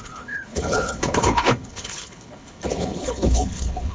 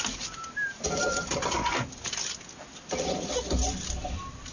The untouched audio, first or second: second